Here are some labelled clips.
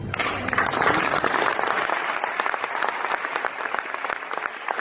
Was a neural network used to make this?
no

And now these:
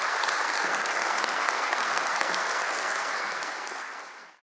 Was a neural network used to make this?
yes